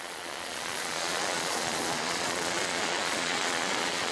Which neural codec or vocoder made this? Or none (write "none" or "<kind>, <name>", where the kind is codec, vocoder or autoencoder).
vocoder, Vocos